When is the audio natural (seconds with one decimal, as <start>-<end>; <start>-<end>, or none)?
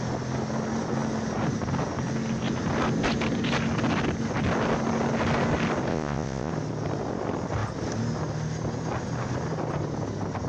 0.0-5.9; 6.5-10.5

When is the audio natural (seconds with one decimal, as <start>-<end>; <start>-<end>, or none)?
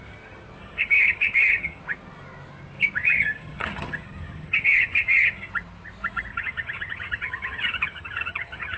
0.0-0.6; 1.8-3.0; 5.5-6.3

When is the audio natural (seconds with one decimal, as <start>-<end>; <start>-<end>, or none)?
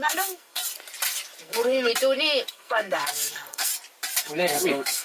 0.6-1.4; 1.9-2.5; 3.7-4.2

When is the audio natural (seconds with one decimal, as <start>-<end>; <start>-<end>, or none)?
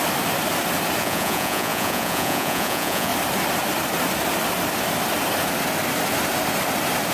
0.0-1.0; 3.1-7.1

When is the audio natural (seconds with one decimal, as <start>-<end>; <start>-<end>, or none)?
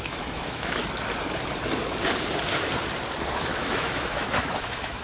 0.8-3.4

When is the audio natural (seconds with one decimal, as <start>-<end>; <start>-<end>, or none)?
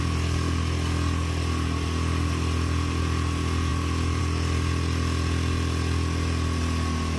0.0-7.2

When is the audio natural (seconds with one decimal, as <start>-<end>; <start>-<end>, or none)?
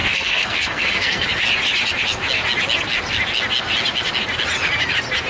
1.3-5.3